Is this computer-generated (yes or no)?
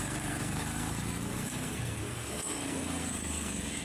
yes